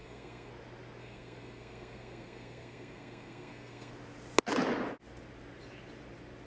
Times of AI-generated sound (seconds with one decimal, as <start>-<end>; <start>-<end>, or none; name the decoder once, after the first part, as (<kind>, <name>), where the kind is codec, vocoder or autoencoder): 0.0-0.5 (codec, SNAC); 1.0-3.9